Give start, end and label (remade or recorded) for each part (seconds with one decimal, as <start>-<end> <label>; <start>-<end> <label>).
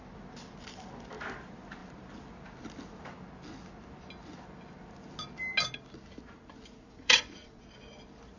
0.0-6.9 recorded; 6.9-7.6 remade; 7.6-8.4 recorded